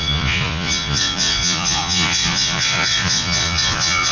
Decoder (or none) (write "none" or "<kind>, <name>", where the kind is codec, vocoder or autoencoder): vocoder, Vocos